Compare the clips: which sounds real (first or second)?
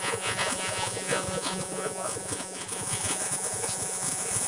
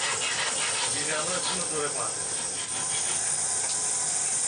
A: second